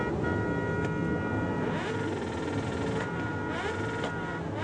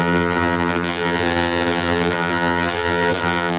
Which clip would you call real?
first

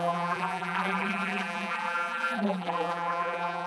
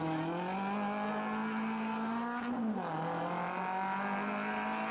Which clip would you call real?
second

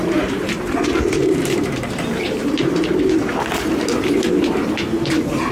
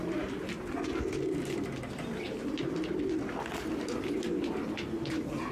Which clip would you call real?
second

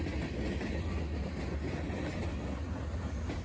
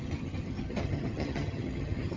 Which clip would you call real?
first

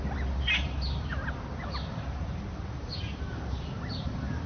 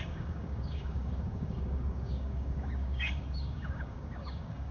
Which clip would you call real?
first